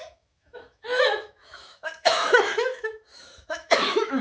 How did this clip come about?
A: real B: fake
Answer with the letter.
B